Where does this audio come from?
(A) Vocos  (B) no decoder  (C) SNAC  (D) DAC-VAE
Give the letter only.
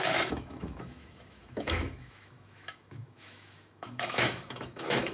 D